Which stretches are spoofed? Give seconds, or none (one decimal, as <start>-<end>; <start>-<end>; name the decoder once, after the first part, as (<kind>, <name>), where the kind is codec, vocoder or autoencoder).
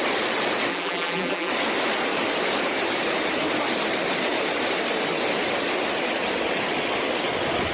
0.7-1.5 (vocoder, BigVGAN v2)